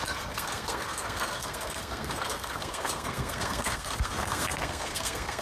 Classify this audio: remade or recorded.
remade